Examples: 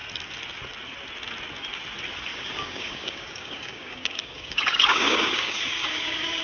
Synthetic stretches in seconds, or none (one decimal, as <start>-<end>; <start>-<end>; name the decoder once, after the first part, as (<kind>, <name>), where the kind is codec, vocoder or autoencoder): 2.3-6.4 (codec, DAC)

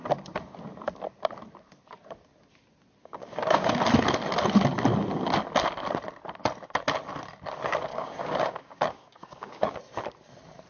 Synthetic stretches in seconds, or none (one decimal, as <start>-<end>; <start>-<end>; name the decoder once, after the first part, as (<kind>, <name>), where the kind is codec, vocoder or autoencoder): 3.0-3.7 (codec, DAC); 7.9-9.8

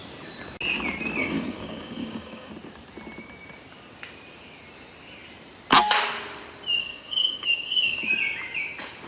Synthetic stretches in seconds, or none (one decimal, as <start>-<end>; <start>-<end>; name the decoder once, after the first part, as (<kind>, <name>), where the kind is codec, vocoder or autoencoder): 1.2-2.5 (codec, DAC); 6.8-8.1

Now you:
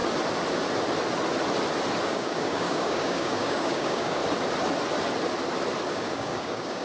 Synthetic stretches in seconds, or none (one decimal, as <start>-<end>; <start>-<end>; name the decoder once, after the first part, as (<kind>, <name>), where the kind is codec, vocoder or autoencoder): 2.0-4.2 (codec, DAC); 5.9-6.8

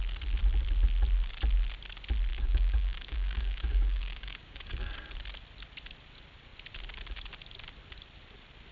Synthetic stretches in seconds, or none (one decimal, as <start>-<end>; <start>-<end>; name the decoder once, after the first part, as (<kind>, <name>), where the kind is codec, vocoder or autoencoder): 2.3-4.9 (codec, DAC)

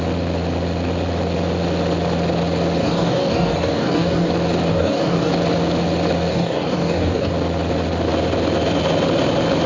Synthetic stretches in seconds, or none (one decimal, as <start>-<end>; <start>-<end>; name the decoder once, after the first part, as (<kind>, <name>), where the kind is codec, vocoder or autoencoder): 2.8-4.3 (codec, DAC); 4.7-5.3; 6.3-7.3

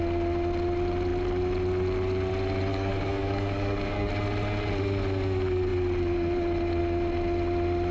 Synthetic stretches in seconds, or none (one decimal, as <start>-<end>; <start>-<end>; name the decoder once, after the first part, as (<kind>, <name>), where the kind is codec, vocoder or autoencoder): 2.7-4.1 (codec, DAC)